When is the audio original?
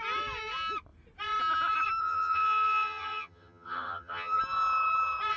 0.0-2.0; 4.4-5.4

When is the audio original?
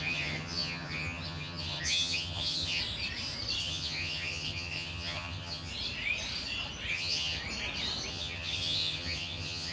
2.8-3.6; 5.7-6.9; 7.4-8.1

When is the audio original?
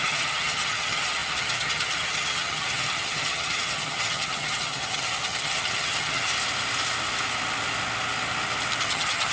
6.3-8.8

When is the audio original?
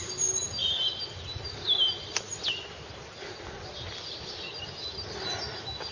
0.0-5.9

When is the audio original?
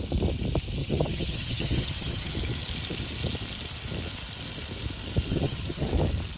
0.0-0.8; 2.3-5.3; 5.9-6.4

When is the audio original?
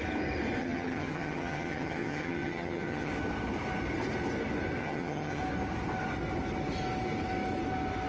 0.0-0.6; 3.1-4.8; 5.4-8.1